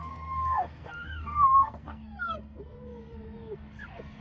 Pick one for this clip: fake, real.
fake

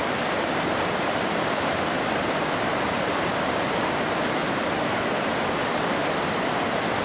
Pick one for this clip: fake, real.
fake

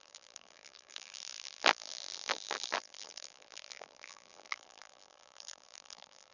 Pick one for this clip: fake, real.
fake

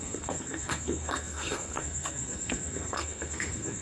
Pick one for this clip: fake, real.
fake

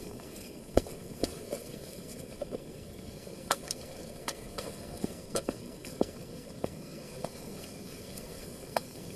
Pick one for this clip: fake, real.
fake